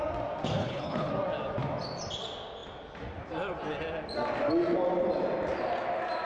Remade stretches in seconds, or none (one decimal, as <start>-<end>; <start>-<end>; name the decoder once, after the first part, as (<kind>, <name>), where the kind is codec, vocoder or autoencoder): 0.6-1.1 (codec, HILCodec)

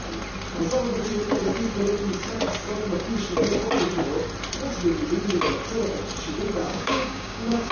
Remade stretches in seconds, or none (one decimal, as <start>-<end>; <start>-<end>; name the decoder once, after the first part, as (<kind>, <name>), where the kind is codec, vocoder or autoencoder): 6.6-7.7 (codec, DAC)

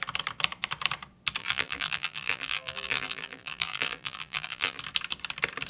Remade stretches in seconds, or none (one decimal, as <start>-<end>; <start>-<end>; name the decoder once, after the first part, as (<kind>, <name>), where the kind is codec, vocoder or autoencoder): 1.4-4.8 (vocoder, BigVGAN v2)

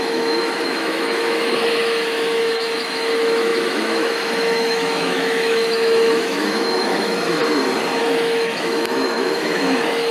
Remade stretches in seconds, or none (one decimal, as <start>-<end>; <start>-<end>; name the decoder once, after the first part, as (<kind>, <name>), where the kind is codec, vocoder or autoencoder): 0.0-7.4 (autoencoder, DAC-VAE); 8.0-10.1

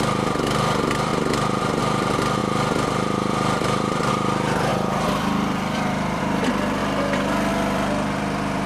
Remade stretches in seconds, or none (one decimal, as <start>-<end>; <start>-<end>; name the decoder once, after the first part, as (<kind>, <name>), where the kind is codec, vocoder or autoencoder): 0.0-1.1 (vocoder, BigVGAN v2); 1.8-6.8; 7.5-8.7

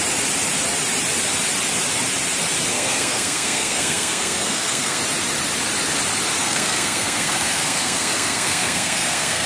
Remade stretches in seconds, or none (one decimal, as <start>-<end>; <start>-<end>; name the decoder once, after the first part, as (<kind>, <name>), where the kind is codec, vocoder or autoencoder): 2.7-5.0 (codec, SNAC); 6.4-9.5

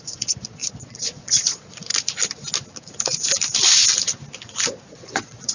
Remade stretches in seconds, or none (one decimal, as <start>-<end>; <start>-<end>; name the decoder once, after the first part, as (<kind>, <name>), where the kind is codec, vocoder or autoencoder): 0.0-1.9 (vocoder, Vocos); 4.8-5.5

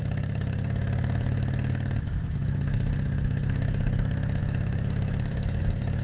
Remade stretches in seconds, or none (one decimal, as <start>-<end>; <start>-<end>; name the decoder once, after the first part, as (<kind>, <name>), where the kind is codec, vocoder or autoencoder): 0.0-6.0 (autoencoder, DAC-VAE)